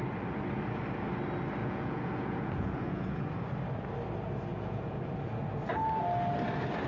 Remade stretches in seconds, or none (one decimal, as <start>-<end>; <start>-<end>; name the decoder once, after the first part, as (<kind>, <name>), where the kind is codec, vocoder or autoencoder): 1.6-3.2 (vocoder, Vocos); 4.5-5.1